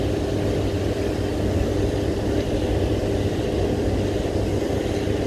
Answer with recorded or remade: recorded